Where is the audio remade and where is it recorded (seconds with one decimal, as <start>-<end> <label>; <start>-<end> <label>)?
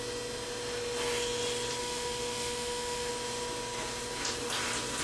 0.0-1.8 recorded; 1.8-3.1 remade; 3.1-5.0 recorded